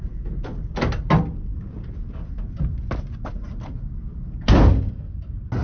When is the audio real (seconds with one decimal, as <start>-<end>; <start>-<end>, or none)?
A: 0.0-5.6